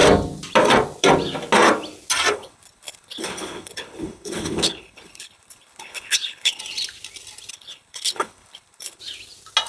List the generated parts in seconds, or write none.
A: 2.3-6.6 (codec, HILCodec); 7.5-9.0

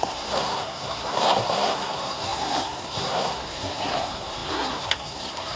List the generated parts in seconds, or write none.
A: 0.0-5.6 (codec, SNAC)

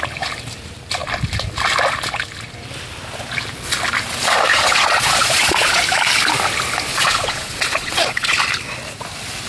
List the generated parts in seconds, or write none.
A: 4.5-5.8 (vocoder, Vocos); 6.9-8.4